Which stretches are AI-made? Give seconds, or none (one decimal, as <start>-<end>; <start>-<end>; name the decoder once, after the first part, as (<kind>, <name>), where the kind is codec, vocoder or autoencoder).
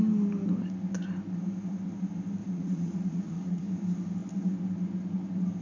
2.4-3.6 (vocoder, Vocos)